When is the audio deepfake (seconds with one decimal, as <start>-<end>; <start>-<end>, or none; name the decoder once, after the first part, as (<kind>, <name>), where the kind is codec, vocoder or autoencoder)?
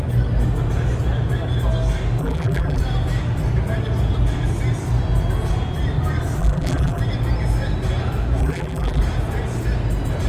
2.2-2.8 (vocoder, BigVGAN v2); 6.4-7.0; 8.4-9.0